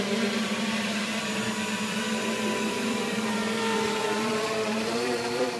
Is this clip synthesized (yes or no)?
yes